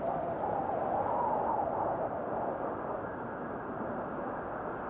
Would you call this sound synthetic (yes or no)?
no